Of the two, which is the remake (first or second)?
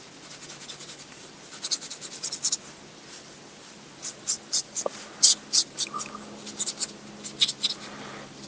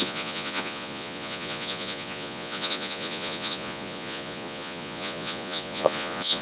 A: second